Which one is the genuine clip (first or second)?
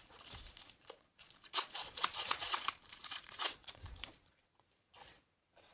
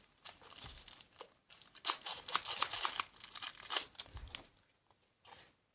second